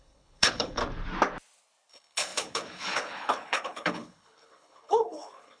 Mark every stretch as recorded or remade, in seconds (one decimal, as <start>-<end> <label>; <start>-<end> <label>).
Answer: 0.0-0.8 remade; 0.8-1.9 recorded; 1.9-5.6 remade